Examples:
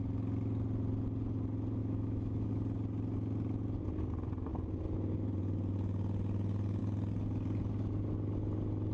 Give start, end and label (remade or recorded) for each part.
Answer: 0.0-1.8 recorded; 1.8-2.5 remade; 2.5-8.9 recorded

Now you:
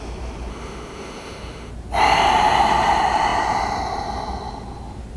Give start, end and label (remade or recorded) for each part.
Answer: 0.0-0.5 recorded; 0.5-1.7 remade; 1.7-5.2 recorded

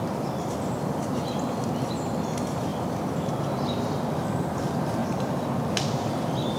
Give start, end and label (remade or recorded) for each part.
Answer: 0.0-5.0 remade; 5.0-5.7 recorded; 5.7-6.6 remade

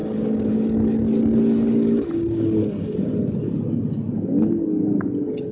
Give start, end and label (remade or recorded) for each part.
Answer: 0.0-5.5 recorded